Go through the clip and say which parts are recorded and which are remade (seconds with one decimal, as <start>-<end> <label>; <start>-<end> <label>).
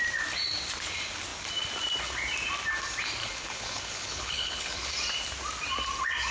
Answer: 0.0-3.2 recorded; 3.2-4.9 remade; 4.9-6.3 recorded